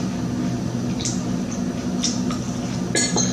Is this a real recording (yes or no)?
yes